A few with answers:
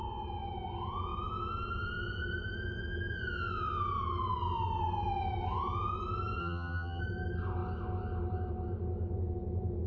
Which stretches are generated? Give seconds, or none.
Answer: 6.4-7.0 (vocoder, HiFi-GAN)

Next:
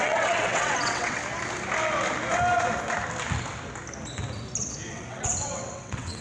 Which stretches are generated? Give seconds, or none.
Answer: 0.0-1.2 (vocoder, WaveNeXt); 4.9-6.2